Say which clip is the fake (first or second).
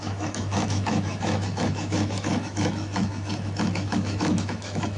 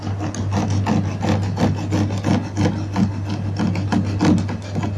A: first